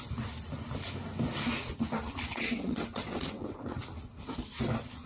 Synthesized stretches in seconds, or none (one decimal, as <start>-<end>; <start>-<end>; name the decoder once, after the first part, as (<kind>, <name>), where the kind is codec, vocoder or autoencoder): 2.3-3.8 (vocoder, WaveNeXt)